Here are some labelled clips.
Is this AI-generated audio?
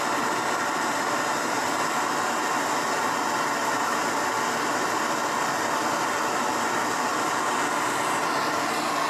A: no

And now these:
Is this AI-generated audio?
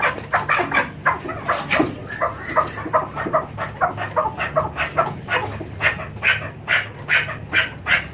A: no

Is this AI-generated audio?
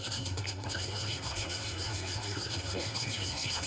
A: yes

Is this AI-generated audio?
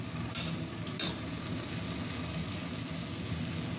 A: no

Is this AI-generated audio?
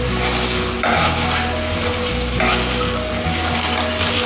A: no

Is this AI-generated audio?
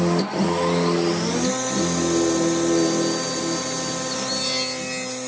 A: no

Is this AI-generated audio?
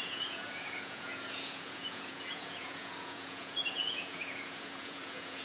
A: yes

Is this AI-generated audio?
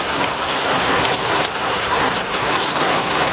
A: yes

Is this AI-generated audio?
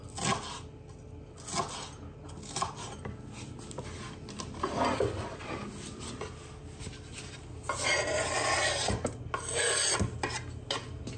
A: no